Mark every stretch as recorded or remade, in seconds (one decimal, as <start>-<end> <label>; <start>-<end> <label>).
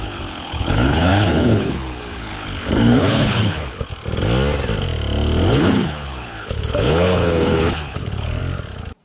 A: 0.0-3.9 remade; 3.9-5.5 recorded; 5.5-8.4 remade; 8.4-9.0 recorded